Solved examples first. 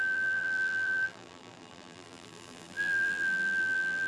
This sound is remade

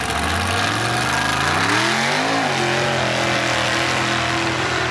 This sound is recorded